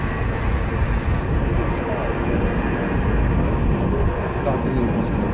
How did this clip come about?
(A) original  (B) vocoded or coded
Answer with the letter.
A